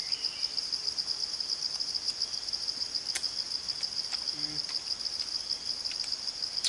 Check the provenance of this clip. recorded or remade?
recorded